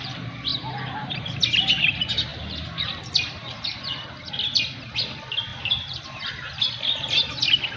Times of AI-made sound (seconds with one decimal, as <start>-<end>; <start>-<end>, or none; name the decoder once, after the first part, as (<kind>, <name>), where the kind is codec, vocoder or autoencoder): 0.5-1.2 (vocoder, BigVGAN v2); 2.3-3.8; 5.5-6.6